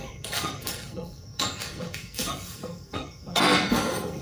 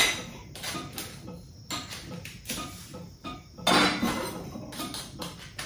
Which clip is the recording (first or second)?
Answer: second